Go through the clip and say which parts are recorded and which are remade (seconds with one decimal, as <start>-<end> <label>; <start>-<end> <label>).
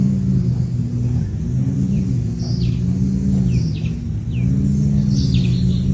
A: 0.0-1.6 recorded; 1.6-2.3 remade; 2.3-5.9 recorded